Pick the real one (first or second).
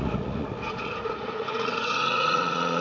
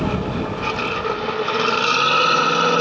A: second